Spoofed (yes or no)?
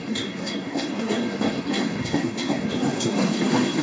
yes